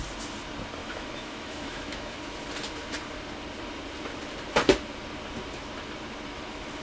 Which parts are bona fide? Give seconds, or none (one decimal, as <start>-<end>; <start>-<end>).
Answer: 0.0-0.8; 2.2-6.8